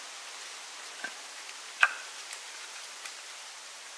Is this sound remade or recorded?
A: recorded